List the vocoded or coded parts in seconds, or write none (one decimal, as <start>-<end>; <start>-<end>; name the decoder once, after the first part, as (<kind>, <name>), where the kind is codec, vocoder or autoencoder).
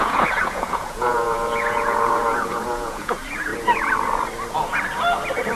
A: 0.0-3.5 (vocoder, Vocos)